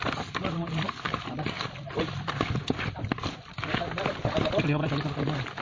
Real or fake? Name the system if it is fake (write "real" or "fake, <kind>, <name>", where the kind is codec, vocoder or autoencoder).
real